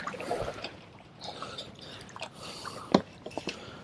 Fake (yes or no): yes